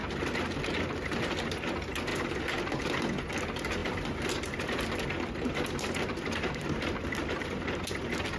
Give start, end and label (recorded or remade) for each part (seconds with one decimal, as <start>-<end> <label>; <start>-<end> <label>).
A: 0.0-0.6 remade; 0.6-2.1 recorded; 2.1-2.8 remade; 2.8-3.8 recorded; 3.8-7.8 remade; 7.8-8.4 recorded